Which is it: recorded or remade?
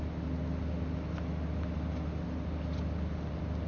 recorded